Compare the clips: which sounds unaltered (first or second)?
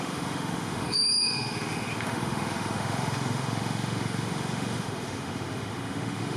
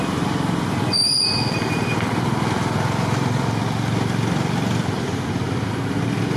second